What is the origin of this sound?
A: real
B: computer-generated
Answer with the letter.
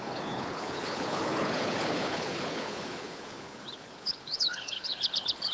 B